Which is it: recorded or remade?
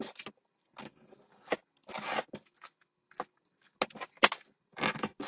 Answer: recorded